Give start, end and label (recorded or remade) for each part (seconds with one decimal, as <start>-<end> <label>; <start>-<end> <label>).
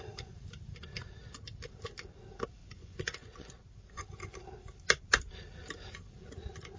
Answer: 0.0-2.6 recorded; 2.6-3.5 remade; 3.5-6.8 recorded